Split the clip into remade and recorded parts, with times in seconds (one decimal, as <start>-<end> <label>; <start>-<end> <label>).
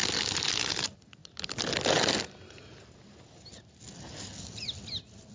0.0-5.3 recorded